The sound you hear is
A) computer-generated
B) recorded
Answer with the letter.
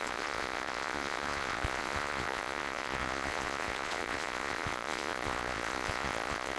A